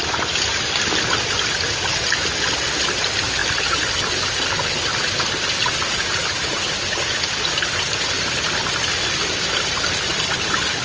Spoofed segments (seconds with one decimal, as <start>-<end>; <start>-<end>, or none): none